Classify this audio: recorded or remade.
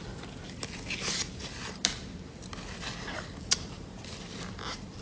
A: recorded